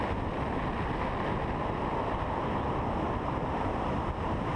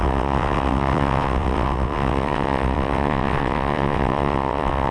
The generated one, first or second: second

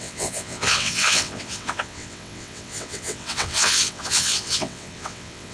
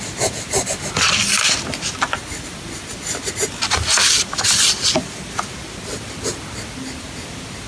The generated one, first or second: first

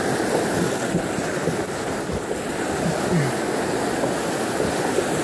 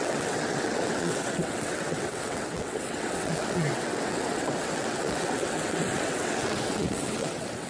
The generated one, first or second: second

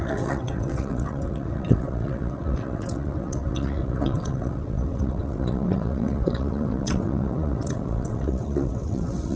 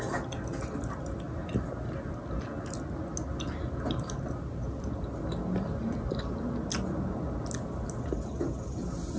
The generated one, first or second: first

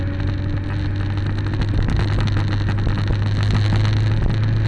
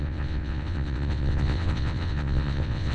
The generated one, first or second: second